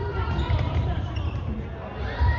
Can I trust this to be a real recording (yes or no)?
no